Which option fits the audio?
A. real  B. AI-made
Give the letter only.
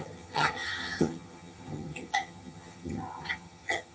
B